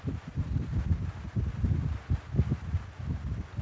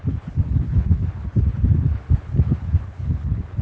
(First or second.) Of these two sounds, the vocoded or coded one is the second